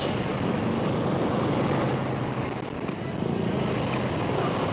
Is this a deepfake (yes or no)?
no